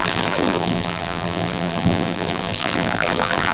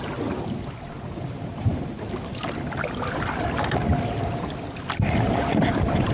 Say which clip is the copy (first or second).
first